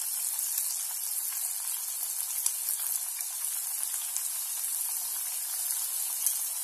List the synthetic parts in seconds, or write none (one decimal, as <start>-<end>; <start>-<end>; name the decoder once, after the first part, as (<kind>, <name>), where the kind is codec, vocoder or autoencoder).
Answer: none